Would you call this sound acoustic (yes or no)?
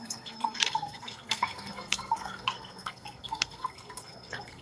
no